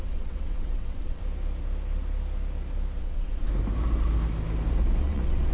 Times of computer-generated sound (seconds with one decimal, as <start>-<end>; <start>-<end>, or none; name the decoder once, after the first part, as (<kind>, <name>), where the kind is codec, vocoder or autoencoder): 0.0-1.2 (vocoder, WaveNeXt); 3.0-3.5; 5.0-5.5